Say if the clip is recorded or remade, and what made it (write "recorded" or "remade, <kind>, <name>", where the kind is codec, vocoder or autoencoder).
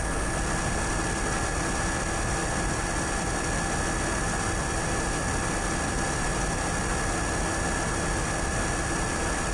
recorded